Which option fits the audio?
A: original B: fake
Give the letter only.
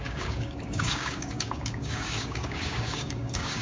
B